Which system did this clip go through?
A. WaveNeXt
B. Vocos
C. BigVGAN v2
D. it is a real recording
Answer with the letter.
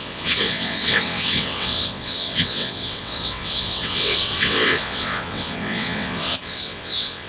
A